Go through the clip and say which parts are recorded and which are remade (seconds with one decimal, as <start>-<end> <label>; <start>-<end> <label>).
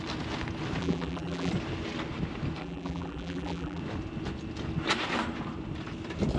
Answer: 0.0-0.8 recorded; 0.8-1.5 remade; 1.5-2.6 recorded; 2.6-3.8 remade; 3.8-6.4 recorded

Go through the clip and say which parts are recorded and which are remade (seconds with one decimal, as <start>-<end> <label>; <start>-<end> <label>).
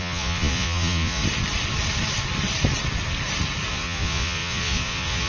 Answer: 0.0-1.2 remade; 1.2-3.7 recorded; 3.7-5.3 remade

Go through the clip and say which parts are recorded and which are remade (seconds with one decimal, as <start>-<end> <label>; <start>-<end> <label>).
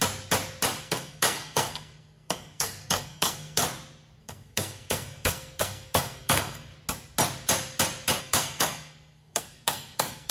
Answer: 0.0-0.8 recorded; 0.8-3.6 remade; 3.6-4.2 recorded; 4.2-6.7 remade; 6.7-8.2 recorded; 8.2-10.3 remade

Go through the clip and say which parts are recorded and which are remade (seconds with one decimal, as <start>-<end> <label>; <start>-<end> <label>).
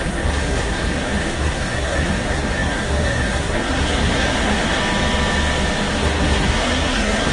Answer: 0.0-4.8 remade; 4.8-5.9 recorded; 5.9-7.3 remade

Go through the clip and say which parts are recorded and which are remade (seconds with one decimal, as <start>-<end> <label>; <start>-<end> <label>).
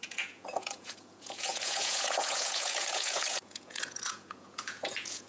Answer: 0.0-5.3 remade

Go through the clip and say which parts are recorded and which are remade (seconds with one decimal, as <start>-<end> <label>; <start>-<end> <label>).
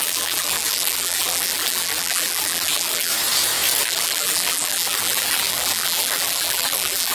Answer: 0.0-3.1 remade; 3.1-3.8 recorded; 3.8-7.1 remade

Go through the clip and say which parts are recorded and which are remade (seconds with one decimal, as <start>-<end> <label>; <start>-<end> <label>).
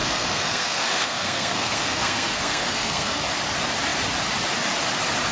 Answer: 0.0-3.2 remade; 3.2-5.3 recorded